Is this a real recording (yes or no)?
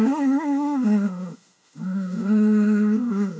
no